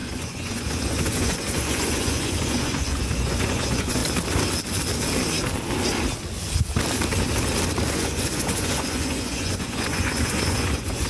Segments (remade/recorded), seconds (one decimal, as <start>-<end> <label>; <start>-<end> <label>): 0.0-4.0 remade; 4.0-7.9 recorded; 7.9-11.1 remade